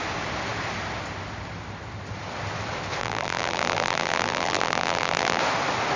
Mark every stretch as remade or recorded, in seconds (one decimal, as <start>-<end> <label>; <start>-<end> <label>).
0.0-3.0 recorded; 3.0-5.4 remade; 5.4-6.0 recorded